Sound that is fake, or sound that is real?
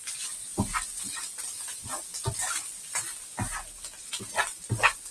real